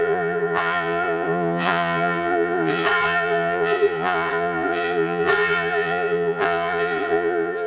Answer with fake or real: fake